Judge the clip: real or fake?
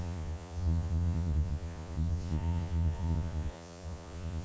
fake